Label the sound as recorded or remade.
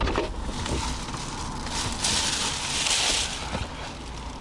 recorded